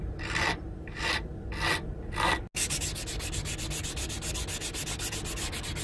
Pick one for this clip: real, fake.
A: real